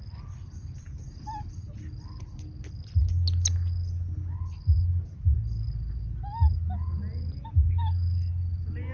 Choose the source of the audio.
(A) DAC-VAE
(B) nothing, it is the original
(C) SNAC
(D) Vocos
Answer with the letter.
B